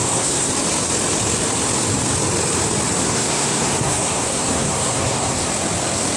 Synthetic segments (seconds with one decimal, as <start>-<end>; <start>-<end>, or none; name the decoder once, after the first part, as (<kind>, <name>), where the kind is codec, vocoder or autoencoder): 0.0-0.5 (codec, SNAC); 3.0-5.5